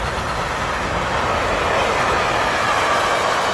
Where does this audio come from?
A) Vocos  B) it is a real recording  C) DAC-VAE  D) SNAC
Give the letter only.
B